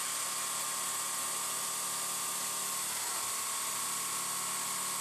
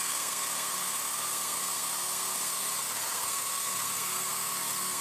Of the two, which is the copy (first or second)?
second